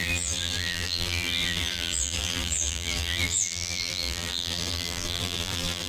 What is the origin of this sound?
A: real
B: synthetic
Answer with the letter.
B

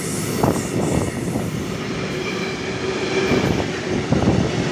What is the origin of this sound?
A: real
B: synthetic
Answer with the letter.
A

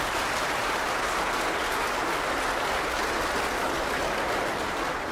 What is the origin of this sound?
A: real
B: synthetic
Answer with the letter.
A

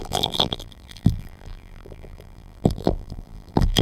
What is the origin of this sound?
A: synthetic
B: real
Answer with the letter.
A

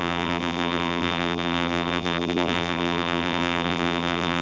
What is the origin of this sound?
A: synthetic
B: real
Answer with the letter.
A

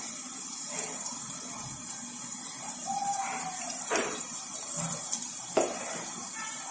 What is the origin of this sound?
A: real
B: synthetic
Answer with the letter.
B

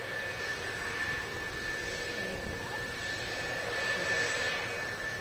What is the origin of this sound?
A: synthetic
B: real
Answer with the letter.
B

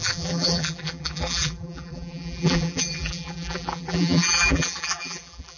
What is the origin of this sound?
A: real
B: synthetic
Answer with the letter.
B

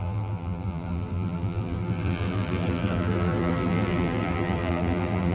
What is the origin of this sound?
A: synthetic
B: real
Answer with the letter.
A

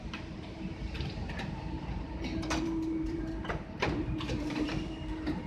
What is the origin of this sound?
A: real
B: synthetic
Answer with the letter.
B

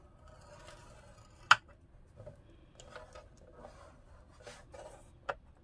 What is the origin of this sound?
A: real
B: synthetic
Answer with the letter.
A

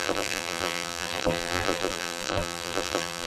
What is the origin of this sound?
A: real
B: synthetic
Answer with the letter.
B